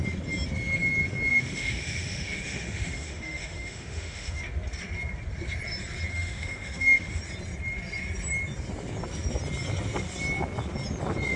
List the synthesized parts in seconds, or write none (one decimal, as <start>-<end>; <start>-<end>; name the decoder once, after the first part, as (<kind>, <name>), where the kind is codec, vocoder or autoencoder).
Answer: 1.3-4.4 (autoencoder, DAC-VAE); 6.1-7.2